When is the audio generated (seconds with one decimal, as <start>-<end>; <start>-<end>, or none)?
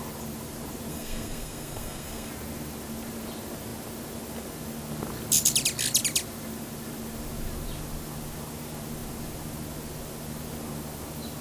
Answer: 0.9-2.3